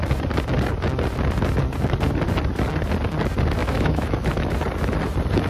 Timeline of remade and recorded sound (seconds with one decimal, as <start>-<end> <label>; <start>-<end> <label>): 0.0-3.6 recorded; 3.6-4.5 remade; 4.5-5.5 recorded

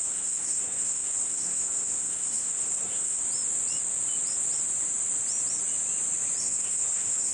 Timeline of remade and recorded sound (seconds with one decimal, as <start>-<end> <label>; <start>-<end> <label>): 0.0-3.2 remade; 3.2-6.4 recorded; 6.4-7.3 remade

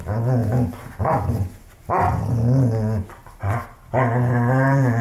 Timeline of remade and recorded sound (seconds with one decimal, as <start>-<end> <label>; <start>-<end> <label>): 0.0-3.2 recorded; 3.2-5.0 remade

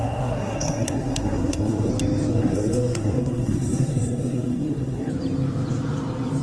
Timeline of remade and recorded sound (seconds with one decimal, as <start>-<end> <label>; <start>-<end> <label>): 0.0-1.9 remade; 1.9-2.3 recorded; 2.3-5.1 remade; 5.1-6.4 recorded

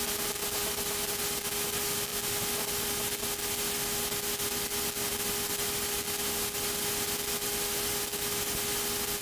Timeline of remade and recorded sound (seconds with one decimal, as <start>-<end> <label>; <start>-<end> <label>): 0.0-9.2 recorded

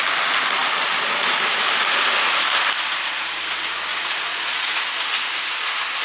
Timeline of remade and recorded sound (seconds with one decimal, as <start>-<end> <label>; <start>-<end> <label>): 0.0-3.9 recorded; 3.9-4.8 remade; 4.8-6.0 recorded

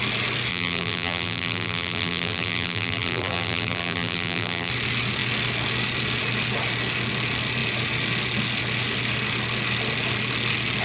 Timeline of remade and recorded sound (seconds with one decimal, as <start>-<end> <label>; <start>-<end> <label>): 0.0-0.5 recorded; 0.5-4.7 remade; 4.7-10.8 recorded

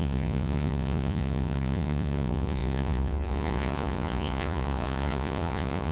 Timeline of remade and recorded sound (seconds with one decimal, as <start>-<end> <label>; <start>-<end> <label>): 0.0-5.9 remade